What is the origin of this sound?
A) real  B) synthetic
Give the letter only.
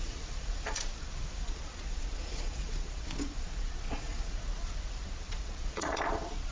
B